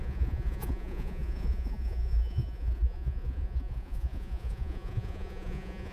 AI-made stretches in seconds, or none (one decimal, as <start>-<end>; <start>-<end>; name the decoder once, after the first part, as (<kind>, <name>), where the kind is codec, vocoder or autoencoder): 0.0-5.9 (vocoder, Vocos)